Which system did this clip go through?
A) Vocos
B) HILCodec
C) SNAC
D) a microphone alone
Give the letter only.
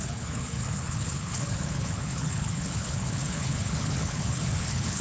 B